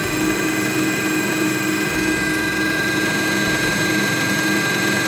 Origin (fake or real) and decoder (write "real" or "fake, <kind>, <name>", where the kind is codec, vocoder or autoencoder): real